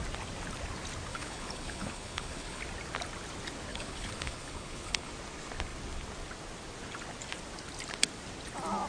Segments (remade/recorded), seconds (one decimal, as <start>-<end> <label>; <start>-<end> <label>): 0.0-1.1 recorded; 1.1-2.6 remade; 2.6-3.7 recorded; 3.7-5.1 remade; 5.1-8.9 recorded